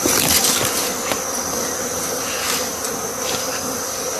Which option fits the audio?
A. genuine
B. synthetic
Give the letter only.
A